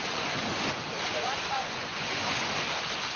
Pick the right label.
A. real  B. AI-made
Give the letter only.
B